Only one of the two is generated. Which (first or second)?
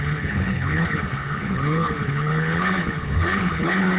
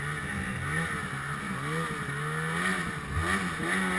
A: first